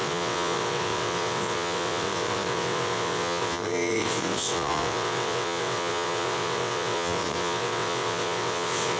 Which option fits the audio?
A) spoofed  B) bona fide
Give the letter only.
A